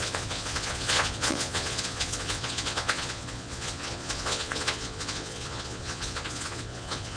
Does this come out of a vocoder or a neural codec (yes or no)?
yes